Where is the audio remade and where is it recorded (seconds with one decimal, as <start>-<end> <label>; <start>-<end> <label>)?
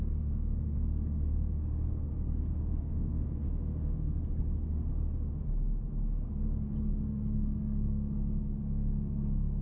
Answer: 0.0-4.9 remade; 4.9-6.9 recorded; 6.9-9.6 remade